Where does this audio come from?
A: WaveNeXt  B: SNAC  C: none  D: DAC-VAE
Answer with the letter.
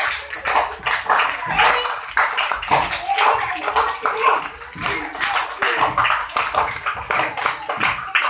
C